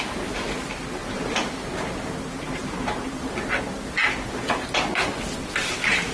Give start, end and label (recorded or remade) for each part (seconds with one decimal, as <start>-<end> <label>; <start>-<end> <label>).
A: 0.0-1.0 recorded; 1.0-3.3 remade; 3.3-6.1 recorded